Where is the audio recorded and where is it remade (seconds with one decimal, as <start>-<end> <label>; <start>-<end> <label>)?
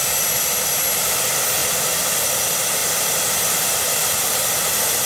0.0-1.6 recorded; 1.6-2.4 remade; 2.4-2.8 recorded; 2.8-5.1 remade